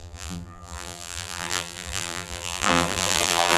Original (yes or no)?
no